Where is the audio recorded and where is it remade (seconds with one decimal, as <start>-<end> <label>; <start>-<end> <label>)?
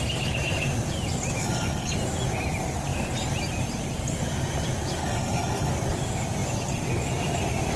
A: 0.0-1.4 recorded; 1.4-1.9 remade; 1.9-5.0 recorded; 5.0-5.7 remade; 5.7-7.8 recorded